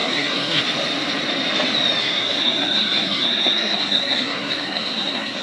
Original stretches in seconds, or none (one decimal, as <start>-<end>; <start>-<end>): 0.6-2.0